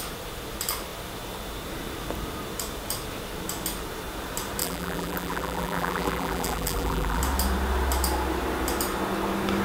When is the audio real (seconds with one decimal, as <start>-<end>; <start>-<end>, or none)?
0.0-4.6; 7.2-9.6